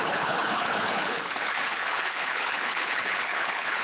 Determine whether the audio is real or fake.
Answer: fake